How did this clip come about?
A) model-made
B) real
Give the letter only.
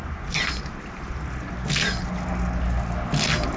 B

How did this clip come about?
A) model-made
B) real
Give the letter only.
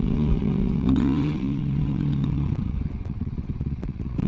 A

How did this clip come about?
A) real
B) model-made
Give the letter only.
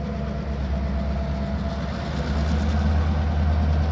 A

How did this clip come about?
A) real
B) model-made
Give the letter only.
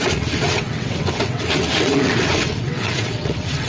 B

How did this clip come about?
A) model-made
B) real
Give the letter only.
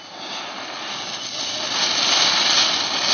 B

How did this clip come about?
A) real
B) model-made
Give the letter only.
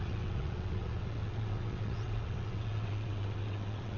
B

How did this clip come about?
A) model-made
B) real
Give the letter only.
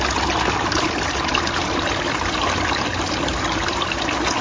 B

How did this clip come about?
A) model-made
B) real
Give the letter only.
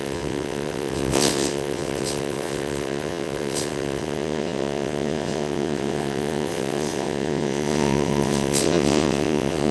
A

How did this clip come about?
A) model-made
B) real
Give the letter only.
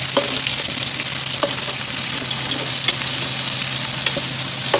B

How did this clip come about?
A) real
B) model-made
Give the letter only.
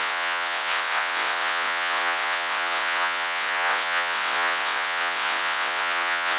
B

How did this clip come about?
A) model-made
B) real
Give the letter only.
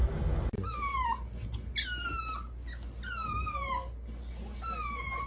B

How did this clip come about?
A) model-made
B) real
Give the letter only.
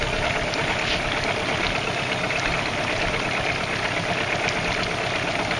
B